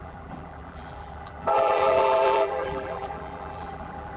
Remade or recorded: remade